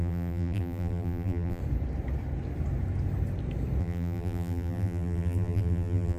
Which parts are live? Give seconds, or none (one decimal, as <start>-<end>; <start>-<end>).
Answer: 1.6-3.8